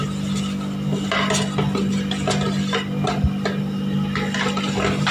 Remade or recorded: recorded